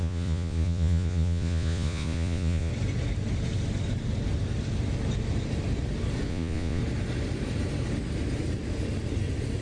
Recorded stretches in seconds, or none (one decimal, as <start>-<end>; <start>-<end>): 2.7-6.3; 6.8-9.6